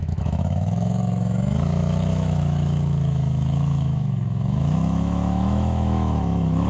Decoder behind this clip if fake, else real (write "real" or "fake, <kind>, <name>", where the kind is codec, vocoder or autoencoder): fake, autoencoder, DAC-VAE